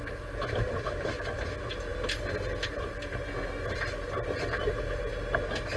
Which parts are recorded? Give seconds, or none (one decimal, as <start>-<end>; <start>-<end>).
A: 0.0-5.8